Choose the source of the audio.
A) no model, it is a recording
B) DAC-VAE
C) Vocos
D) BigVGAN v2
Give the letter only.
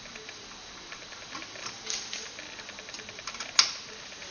A